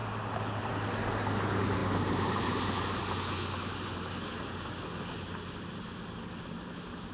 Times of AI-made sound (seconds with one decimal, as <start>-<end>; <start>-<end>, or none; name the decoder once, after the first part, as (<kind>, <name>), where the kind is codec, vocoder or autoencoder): none